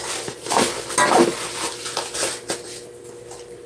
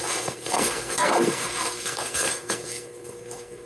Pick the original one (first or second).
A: first